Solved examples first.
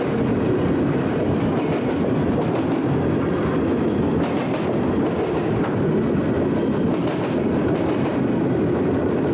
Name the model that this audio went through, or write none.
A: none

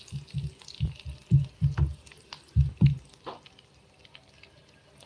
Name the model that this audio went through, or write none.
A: none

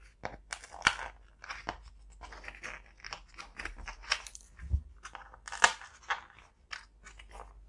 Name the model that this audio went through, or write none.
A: none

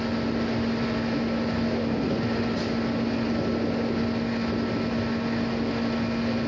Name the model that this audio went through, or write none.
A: none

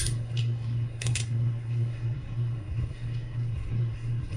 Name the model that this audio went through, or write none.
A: codec, SNAC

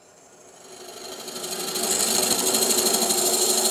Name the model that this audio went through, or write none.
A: none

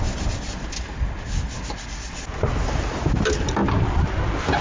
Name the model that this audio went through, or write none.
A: none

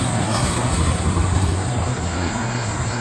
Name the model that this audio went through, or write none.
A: codec, SNAC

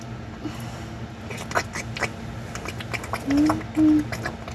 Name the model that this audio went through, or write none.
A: none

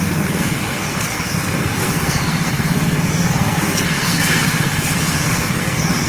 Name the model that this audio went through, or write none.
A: codec, SNAC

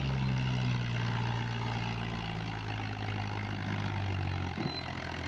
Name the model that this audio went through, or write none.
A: none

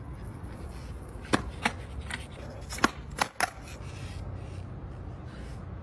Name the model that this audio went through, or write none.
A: none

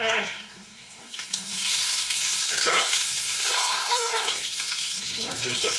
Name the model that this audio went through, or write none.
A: codec, SNAC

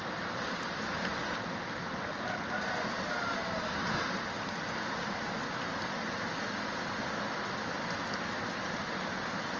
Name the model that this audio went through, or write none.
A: none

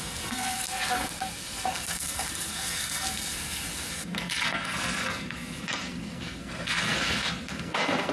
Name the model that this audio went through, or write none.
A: codec, SNAC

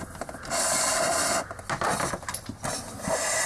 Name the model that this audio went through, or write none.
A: none